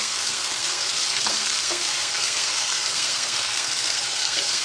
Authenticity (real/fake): fake